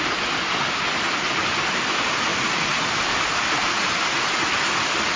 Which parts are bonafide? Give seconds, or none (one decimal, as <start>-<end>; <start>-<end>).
0.0-5.2